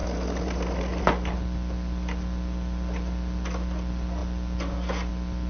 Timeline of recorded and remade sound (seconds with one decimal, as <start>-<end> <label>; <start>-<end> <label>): 0.0-5.5 recorded